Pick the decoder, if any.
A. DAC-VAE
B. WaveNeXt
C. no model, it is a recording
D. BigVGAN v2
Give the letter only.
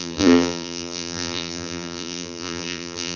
D